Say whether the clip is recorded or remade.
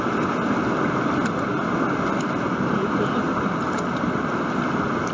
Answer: recorded